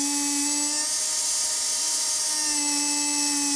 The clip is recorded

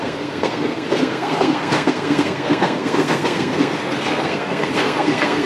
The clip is remade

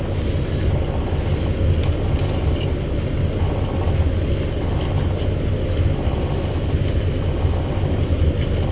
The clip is recorded